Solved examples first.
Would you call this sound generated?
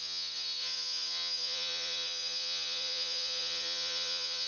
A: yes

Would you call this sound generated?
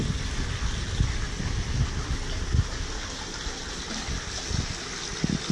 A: no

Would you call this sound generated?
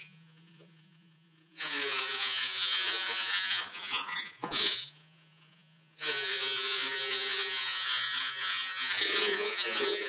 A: yes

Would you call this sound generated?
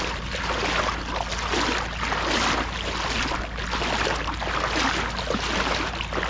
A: no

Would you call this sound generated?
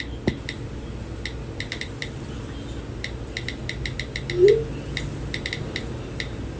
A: no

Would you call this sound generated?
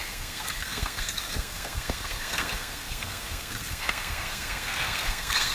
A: yes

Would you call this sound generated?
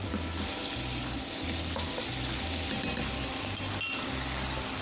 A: no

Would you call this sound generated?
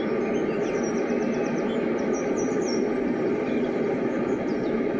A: no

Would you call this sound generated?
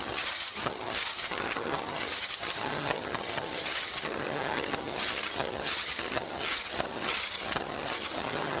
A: yes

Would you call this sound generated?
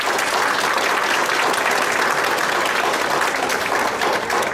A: no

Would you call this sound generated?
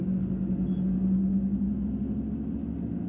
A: no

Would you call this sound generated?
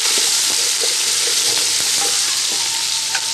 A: yes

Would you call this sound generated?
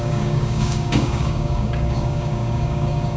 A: yes